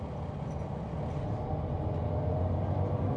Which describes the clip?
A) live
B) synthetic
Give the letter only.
A